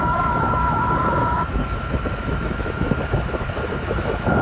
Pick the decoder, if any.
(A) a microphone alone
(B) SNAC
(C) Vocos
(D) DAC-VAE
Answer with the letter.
D